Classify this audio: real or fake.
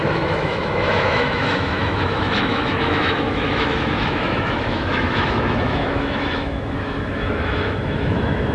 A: fake